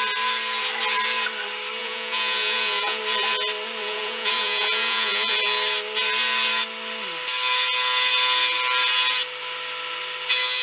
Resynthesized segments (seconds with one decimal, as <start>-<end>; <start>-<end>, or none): 1.8-3.0; 3.8-5.3